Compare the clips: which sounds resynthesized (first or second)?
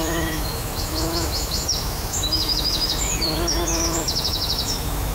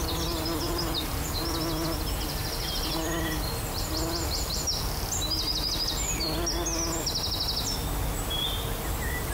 first